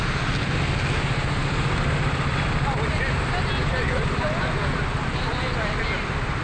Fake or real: real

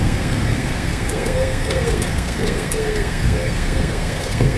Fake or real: fake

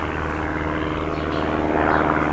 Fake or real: real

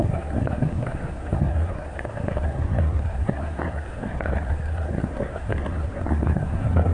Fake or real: fake